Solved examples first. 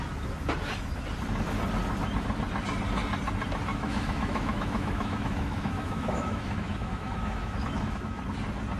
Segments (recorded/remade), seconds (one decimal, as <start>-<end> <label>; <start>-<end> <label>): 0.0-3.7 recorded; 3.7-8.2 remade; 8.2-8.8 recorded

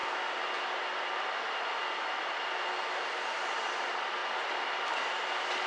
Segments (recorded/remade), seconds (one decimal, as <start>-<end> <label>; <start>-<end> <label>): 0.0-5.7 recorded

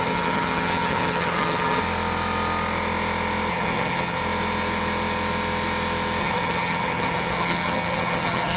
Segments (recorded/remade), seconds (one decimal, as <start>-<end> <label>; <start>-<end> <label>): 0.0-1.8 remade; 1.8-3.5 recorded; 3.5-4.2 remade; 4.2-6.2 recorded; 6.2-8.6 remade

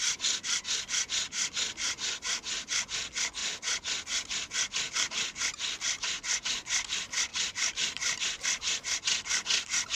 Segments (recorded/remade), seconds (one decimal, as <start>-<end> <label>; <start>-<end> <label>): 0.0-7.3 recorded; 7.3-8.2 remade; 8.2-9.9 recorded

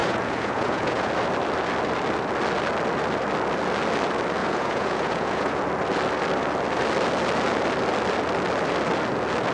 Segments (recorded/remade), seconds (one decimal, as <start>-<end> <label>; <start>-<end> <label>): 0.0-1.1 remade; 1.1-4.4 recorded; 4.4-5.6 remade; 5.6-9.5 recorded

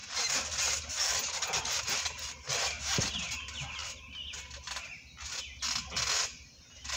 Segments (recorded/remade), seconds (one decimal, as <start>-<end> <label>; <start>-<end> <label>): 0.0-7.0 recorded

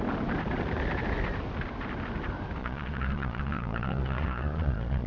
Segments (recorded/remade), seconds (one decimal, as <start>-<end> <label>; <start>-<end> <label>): 0.0-2.6 recorded; 2.6-5.1 remade